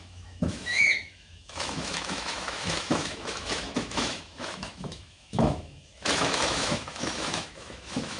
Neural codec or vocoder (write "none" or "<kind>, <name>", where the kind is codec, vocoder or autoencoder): autoencoder, DAC-VAE